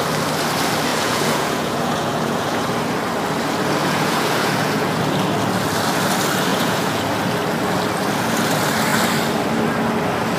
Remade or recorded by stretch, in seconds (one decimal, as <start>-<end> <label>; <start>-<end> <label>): 0.0-0.9 recorded; 0.9-2.7 remade; 2.7-3.8 recorded; 3.8-5.0 remade; 5.0-6.5 recorded; 6.5-7.0 remade; 7.0-10.4 recorded